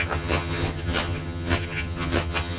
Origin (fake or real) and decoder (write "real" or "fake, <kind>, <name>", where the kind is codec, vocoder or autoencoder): fake, vocoder, HiFi-GAN